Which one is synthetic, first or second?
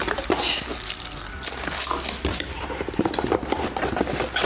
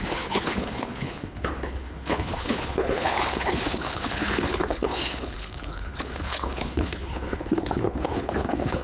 second